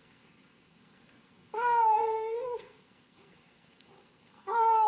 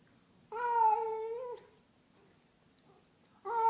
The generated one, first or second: first